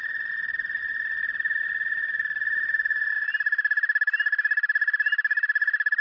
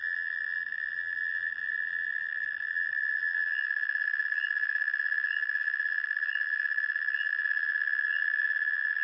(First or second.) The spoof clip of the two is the second